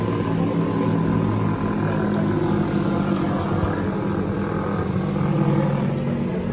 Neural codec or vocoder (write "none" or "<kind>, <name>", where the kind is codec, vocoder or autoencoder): none